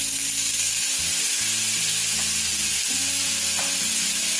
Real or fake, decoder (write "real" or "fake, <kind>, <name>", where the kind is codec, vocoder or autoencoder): real